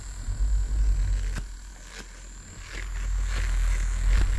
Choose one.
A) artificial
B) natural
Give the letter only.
B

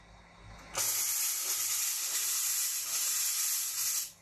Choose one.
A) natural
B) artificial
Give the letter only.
A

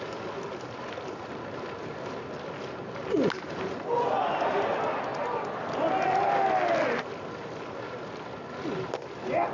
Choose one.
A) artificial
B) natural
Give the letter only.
B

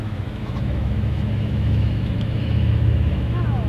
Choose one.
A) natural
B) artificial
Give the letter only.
B